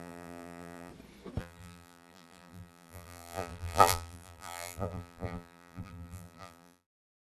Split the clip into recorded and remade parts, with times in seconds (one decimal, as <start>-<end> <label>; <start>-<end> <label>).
0.0-0.9 remade; 0.9-1.4 recorded; 1.4-7.4 remade